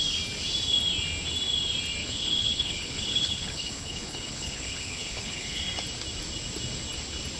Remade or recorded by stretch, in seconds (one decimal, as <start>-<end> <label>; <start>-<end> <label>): 0.0-2.0 recorded; 2.0-5.6 remade; 5.6-7.4 recorded